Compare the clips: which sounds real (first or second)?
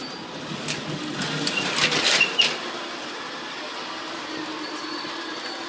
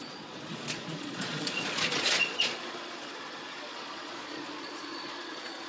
first